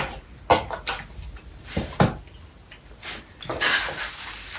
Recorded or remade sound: recorded